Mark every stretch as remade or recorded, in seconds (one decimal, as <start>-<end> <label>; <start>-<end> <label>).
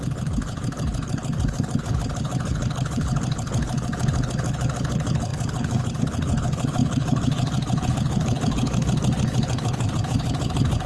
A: 0.0-10.9 remade